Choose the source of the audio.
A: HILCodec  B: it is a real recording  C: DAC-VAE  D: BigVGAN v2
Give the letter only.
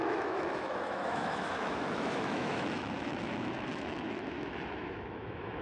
C